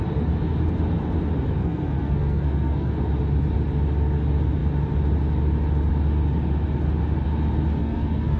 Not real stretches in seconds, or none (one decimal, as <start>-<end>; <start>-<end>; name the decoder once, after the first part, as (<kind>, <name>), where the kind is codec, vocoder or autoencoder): 1.6-2.9 (codec, SNAC); 7.8-8.4